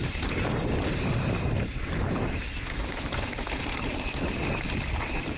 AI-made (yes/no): yes